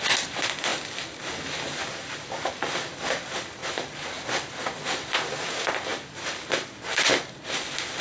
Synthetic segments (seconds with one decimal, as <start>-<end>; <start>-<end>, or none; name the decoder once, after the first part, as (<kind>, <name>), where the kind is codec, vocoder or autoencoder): 0.0-0.7 (vocoder, BigVGAN v2); 1.8-7.1